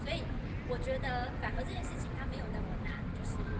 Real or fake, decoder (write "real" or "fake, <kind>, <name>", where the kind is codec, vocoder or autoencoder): real